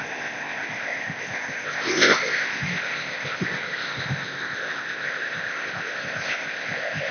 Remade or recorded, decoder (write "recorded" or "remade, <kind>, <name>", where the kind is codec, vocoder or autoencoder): remade, codec, ZipCodec